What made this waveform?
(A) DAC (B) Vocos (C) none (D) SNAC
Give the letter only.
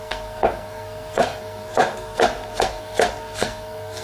D